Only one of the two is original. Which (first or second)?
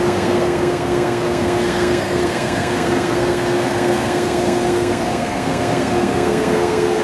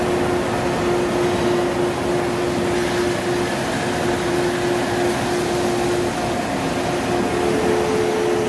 second